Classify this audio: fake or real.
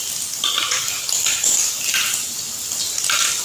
real